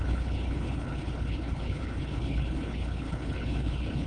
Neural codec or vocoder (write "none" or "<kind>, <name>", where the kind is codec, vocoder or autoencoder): codec, HILCodec